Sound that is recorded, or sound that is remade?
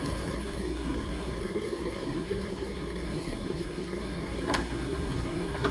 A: remade